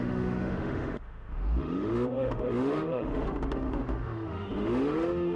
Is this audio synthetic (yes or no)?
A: yes